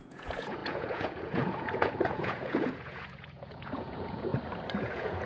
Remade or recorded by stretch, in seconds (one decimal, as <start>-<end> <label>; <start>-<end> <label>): 0.0-4.3 remade; 4.3-4.8 recorded; 4.8-5.3 remade